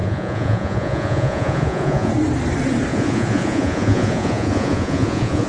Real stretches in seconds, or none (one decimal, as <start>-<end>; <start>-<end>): 2.1-2.9